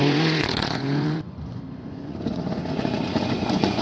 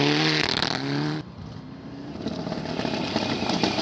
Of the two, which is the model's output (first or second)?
first